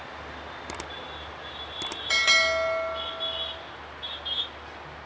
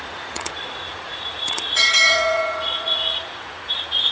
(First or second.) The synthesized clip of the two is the second